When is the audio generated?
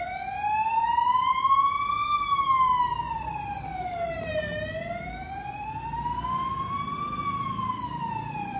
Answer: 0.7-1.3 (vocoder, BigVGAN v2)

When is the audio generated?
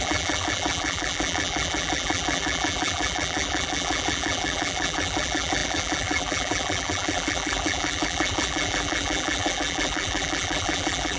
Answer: 0.0-11.2 (vocoder, BigVGAN v2)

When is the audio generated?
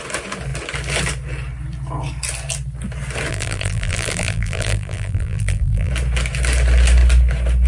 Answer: 3.3-5.9 (vocoder, BigVGAN v2)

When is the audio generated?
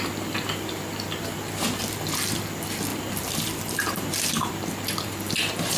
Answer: 2.9-4.5 (vocoder, BigVGAN v2)